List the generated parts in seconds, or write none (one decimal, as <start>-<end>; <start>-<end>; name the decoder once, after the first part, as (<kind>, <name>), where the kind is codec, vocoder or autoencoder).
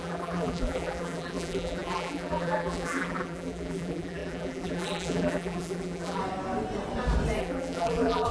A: 0.0-6.2 (vocoder, BigVGAN v2); 7.4-8.3